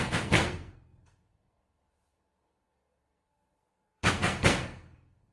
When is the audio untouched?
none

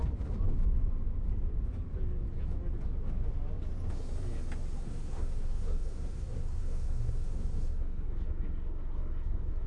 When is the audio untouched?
0.0-4.8

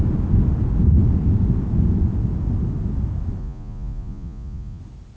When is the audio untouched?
0.0-3.4; 4.8-5.2

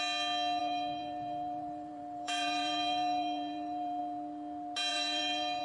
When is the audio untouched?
0.0-0.6; 4.0-4.9

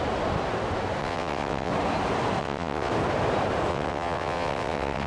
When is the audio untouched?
0.0-1.0; 1.7-2.4; 2.9-3.7